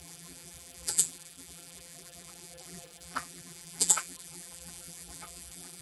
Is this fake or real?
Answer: fake